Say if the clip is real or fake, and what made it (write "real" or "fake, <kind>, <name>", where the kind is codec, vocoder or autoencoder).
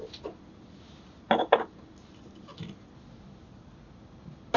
real